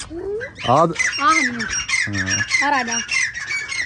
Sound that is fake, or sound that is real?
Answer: real